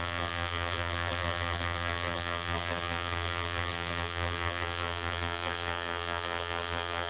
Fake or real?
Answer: fake